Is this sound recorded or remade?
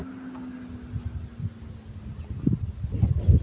recorded